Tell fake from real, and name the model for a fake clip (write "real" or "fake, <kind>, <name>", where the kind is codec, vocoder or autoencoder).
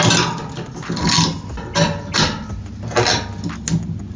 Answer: real